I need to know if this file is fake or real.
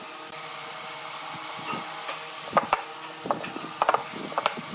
real